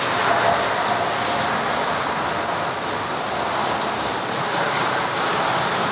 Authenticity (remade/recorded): recorded